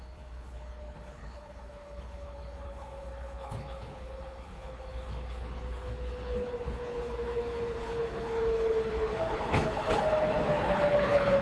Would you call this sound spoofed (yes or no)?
yes